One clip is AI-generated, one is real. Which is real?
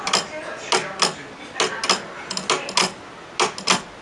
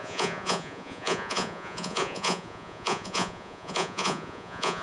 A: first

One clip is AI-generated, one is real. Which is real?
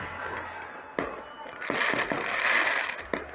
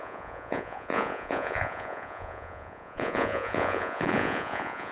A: first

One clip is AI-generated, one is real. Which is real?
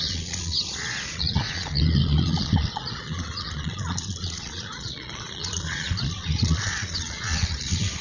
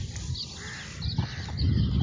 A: second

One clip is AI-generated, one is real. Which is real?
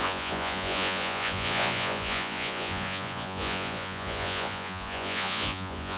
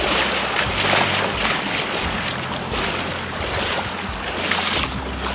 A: second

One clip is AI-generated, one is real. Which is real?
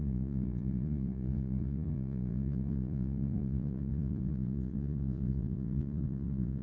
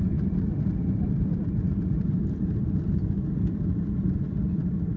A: second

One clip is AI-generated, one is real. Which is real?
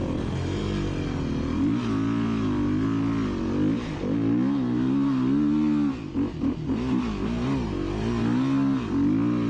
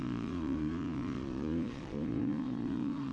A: first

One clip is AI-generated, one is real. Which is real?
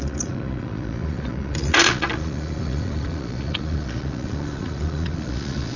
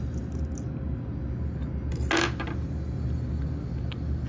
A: second